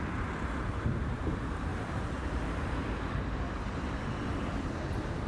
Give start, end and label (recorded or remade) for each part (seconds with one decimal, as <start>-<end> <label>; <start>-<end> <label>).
0.0-1.7 recorded; 1.7-5.3 remade